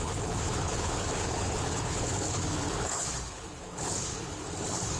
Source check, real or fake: fake